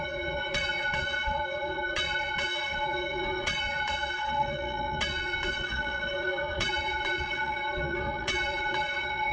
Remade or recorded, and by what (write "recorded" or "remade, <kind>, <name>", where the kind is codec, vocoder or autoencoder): remade, vocoder, Vocos